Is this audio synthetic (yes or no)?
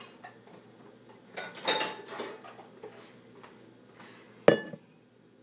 no